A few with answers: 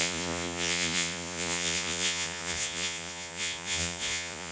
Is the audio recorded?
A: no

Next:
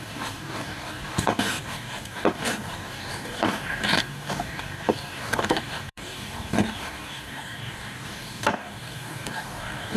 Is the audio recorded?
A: no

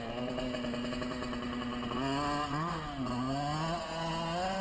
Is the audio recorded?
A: yes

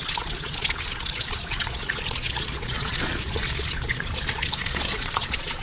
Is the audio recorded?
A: no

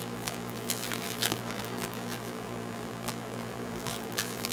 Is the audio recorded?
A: no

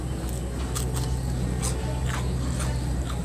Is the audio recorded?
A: yes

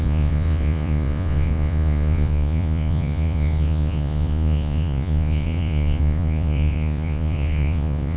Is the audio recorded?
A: no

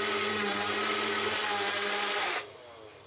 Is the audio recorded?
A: yes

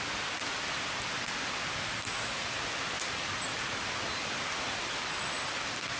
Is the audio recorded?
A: yes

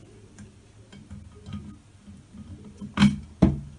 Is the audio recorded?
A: yes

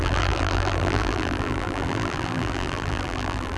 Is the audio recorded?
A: no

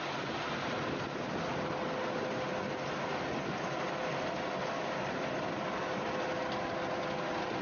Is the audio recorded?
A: yes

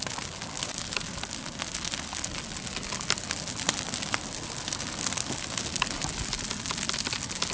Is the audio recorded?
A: yes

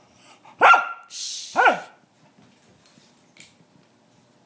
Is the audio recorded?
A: yes